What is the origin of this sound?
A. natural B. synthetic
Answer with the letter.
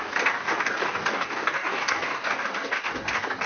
B